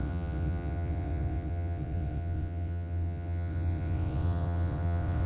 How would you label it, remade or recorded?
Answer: remade